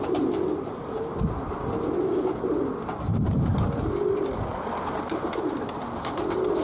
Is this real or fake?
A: real